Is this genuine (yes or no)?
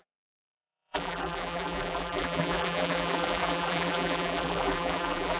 no